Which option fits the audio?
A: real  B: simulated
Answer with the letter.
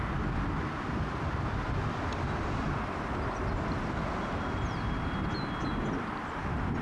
A